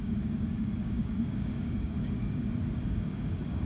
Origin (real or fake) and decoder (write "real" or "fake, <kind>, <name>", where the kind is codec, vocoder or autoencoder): fake, codec, DAC